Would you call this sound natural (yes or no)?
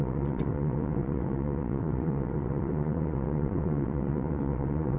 no